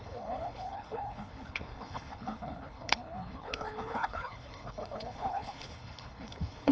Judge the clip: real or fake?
fake